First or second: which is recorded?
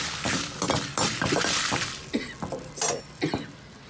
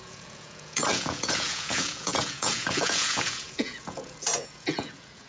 first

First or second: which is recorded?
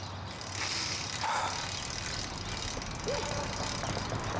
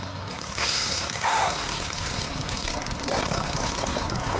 first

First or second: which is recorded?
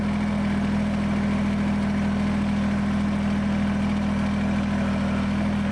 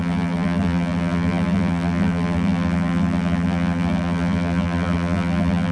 first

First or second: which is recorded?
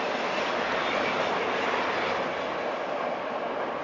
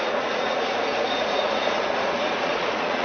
first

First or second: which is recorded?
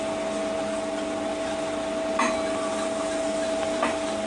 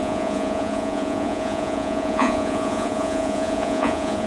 first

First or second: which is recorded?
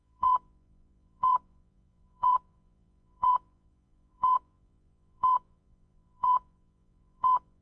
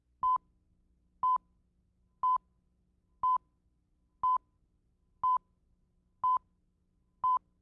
second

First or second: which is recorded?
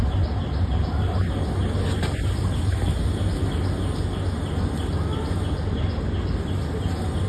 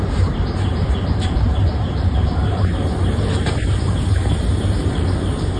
first